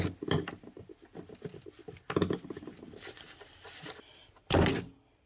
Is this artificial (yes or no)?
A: no